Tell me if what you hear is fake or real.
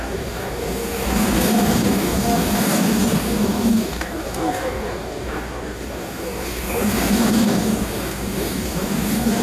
fake